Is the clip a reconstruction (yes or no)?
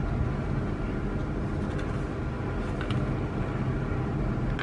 no